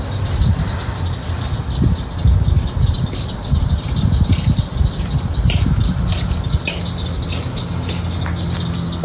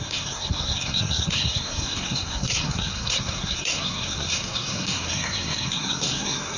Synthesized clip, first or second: second